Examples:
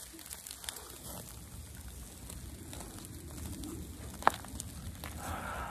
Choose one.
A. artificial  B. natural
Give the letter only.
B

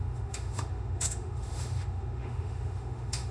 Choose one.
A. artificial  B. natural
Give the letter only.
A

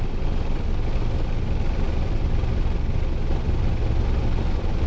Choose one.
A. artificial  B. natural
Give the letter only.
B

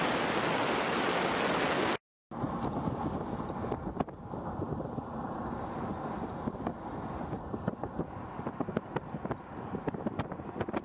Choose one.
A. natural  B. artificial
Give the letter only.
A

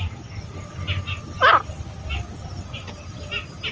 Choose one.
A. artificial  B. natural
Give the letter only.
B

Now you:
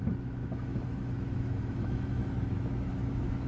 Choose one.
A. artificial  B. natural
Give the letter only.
A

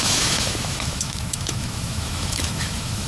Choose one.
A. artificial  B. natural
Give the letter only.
A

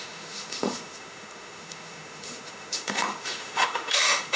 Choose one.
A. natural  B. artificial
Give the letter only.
B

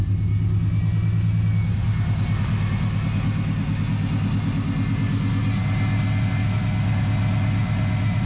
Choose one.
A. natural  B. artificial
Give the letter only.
A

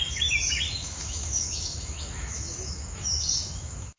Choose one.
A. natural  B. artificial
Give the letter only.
B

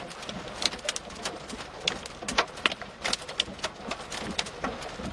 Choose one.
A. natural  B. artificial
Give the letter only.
A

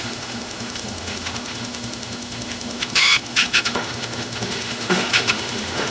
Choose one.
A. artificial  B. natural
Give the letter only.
A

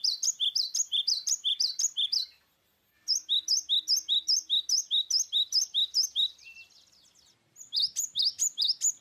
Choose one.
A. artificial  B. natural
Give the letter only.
B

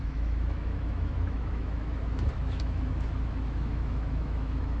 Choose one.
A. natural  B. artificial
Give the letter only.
B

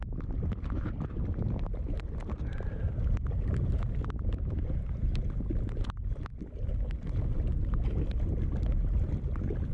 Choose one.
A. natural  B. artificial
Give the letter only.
A